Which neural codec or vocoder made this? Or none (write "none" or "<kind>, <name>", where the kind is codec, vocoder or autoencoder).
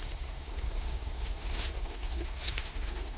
codec, SNAC